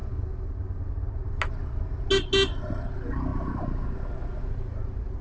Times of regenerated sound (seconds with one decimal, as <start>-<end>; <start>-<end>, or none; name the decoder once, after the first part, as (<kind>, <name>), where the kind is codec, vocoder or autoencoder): none